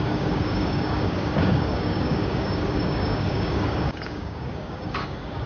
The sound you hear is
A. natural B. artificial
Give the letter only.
B